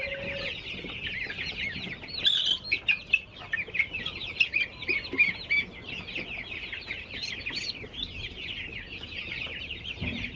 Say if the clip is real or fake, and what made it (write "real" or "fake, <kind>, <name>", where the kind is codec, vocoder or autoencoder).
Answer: real